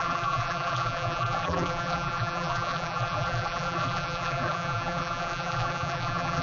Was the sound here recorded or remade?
remade